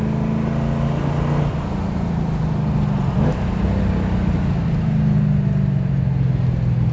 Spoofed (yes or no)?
no